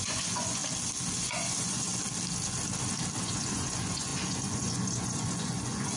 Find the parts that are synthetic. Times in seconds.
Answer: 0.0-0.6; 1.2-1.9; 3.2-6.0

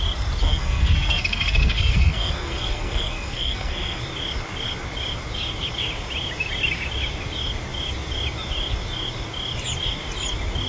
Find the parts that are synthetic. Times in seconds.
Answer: 0.4-4.0

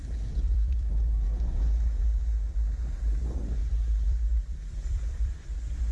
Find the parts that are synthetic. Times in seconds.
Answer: 0.0-0.9; 3.6-5.5

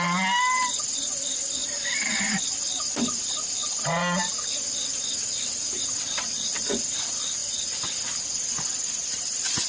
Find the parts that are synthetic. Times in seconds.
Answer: none

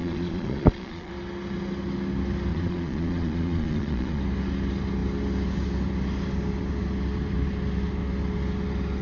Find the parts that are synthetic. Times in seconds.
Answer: 0.0-1.1; 2.5-4.2

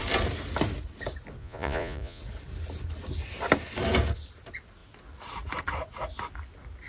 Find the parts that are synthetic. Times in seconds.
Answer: 1.4-2.2

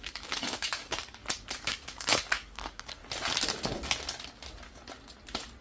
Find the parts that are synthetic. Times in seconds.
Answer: 0.0-1.2; 1.7-3.0